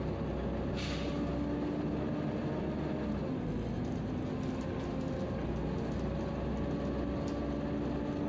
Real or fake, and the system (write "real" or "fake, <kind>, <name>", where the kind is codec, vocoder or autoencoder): real